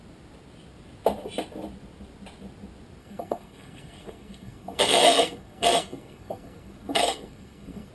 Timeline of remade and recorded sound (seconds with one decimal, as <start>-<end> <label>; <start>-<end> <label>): 0.0-3.0 recorded; 3.0-7.9 remade